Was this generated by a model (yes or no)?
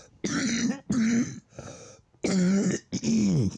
no